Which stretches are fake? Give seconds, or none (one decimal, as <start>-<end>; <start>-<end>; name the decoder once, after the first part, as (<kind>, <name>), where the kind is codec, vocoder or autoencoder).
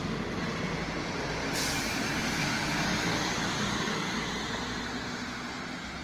2.4-4.3 (codec, DAC)